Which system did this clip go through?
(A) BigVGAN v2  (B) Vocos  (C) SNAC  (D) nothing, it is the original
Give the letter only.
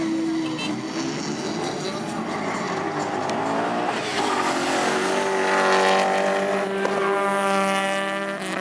D